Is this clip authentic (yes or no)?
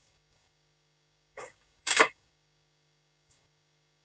no